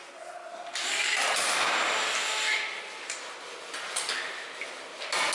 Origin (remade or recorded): recorded